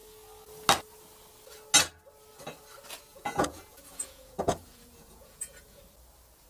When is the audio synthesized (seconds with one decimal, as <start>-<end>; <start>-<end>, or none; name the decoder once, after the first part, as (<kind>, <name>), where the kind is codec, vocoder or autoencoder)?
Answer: 3.1-5.8 (vocoder, Vocos)